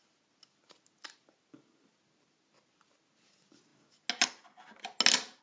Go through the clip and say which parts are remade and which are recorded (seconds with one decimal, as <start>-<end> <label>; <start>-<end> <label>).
0.0-5.4 recorded